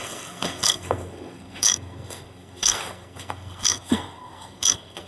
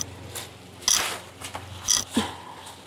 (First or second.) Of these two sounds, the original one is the second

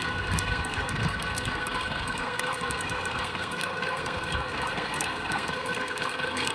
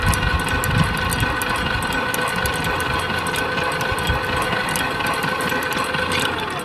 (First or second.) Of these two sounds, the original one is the second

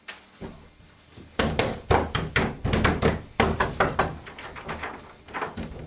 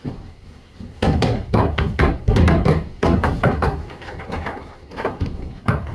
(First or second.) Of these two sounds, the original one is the first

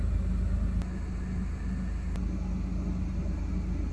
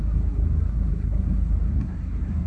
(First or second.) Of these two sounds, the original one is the first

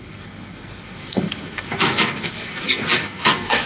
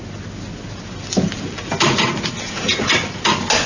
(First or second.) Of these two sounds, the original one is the second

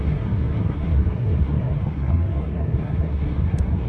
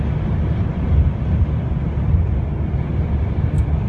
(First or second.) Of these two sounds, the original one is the second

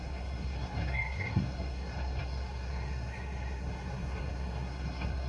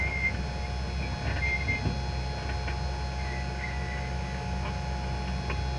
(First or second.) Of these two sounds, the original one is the second